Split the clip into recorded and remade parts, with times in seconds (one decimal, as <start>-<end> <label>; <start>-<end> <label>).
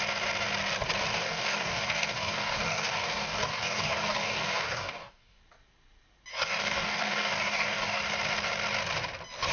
0.0-1.2 recorded; 1.2-5.4 remade; 5.4-6.3 recorded; 6.3-8.0 remade; 8.0-9.5 recorded